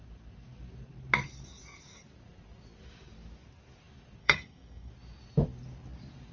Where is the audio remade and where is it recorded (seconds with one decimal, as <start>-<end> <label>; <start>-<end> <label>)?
0.0-4.2 recorded; 4.2-4.9 remade; 4.9-6.3 recorded